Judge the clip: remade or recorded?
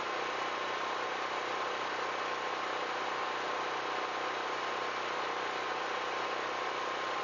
recorded